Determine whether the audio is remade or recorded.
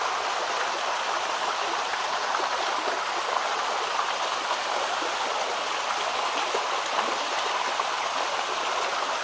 recorded